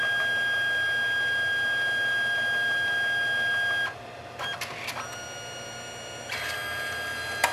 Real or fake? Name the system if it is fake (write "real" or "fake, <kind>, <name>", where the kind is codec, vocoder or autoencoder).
real